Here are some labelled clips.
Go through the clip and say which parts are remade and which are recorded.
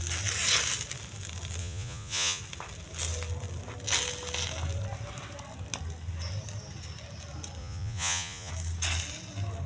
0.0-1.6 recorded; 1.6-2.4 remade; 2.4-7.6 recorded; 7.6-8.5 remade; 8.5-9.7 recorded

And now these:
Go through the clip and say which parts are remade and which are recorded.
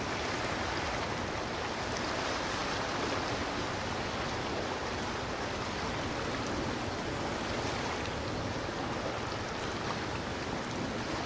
0.0-4.8 recorded; 4.8-5.5 remade; 5.5-11.3 recorded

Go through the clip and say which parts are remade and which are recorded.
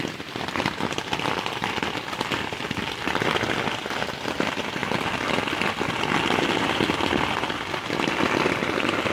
0.0-9.1 recorded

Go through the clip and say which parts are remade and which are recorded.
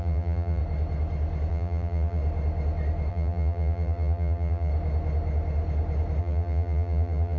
0.0-0.6 remade; 0.6-1.5 recorded; 1.5-2.2 remade; 2.2-3.1 recorded; 3.1-4.7 remade; 4.7-6.2 recorded; 6.2-7.4 remade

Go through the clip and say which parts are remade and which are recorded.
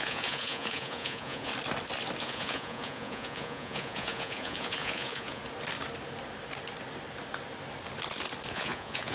0.0-1.5 remade; 1.5-2.2 recorded; 2.2-5.4 remade; 5.4-8.5 recorded; 8.5-9.1 remade